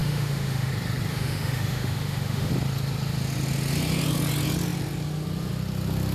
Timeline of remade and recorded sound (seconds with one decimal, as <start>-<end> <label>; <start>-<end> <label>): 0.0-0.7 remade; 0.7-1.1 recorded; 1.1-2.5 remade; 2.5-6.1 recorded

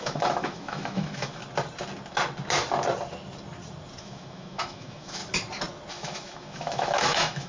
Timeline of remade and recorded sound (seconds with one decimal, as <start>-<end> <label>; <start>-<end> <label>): 0.0-1.4 remade; 1.4-4.0 recorded; 4.0-5.2 remade; 5.2-5.9 recorded; 5.9-7.5 remade

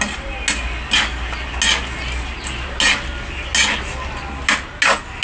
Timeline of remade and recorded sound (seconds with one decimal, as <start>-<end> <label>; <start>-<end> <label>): 0.0-5.2 recorded

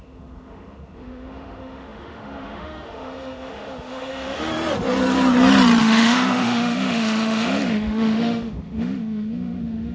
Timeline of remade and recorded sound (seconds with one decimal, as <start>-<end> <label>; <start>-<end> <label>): 0.0-4.5 remade; 4.5-5.8 recorded; 5.8-9.9 remade

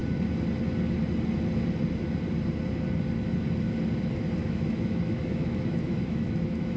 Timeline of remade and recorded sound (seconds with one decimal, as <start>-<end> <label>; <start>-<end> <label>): 0.0-4.4 recorded; 4.4-6.8 remade